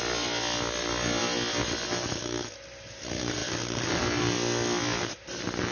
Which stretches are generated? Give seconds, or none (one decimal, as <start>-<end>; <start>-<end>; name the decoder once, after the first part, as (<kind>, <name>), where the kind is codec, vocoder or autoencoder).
none